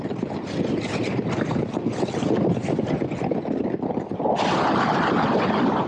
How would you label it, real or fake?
fake